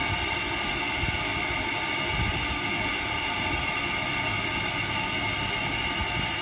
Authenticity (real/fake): real